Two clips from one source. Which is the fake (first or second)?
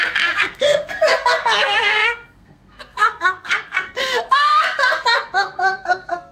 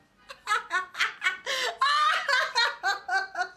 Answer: first